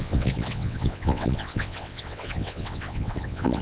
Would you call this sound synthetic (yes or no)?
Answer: yes